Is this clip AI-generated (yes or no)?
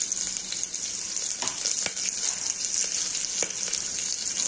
no